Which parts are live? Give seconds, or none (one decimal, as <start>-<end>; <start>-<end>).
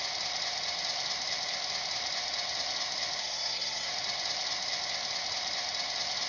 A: 0.0-3.2; 3.9-6.3